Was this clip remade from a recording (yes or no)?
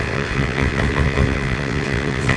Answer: yes